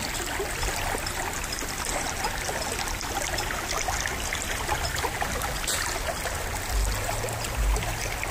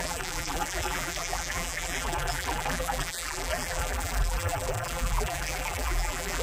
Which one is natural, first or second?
first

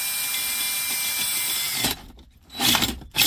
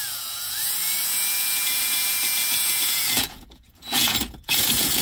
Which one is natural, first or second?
first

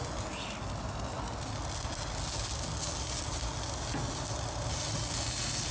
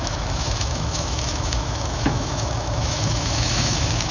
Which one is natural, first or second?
first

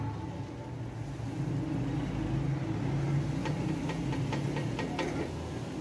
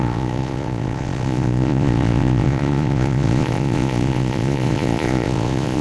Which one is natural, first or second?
first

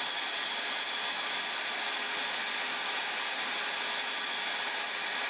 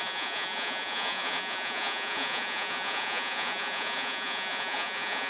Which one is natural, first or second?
first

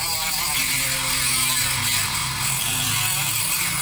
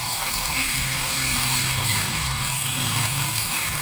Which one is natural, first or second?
first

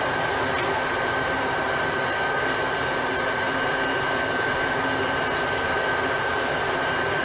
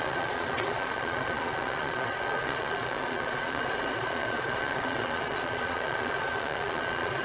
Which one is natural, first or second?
first